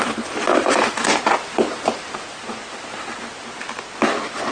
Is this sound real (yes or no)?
yes